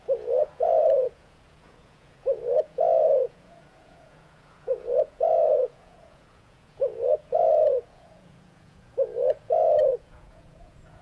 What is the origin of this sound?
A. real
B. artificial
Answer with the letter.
B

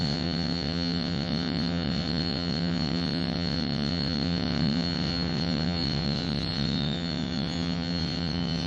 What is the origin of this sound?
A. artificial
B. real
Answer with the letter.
A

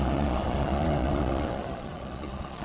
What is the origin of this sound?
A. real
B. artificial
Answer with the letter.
B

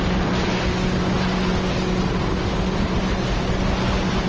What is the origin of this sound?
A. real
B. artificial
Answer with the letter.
A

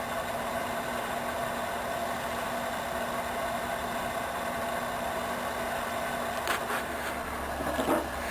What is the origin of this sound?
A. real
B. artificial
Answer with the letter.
B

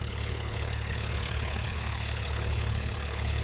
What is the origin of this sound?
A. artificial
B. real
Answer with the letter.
A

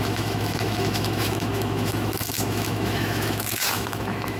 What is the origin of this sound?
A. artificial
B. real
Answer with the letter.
A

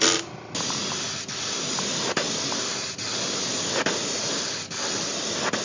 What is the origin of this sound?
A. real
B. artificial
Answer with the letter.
A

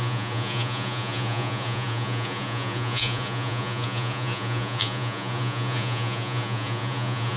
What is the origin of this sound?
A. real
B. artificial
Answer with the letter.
B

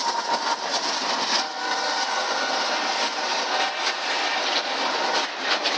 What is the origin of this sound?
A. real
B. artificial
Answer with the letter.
A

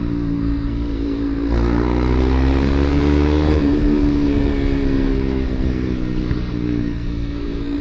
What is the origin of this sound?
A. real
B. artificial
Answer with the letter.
B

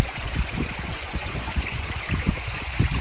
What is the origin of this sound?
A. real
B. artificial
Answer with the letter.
B